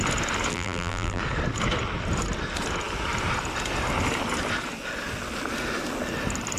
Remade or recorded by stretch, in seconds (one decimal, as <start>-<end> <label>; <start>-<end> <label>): 0.0-0.5 recorded; 0.5-1.2 remade; 1.2-6.6 recorded